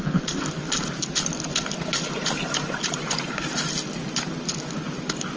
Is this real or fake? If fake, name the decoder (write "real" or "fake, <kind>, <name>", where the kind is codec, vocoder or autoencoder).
real